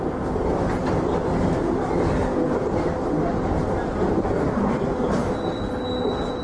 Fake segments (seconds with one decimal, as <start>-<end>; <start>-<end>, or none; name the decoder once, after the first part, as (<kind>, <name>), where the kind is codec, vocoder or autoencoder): none